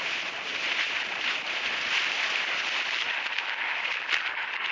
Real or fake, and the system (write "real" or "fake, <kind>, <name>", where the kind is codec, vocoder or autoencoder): real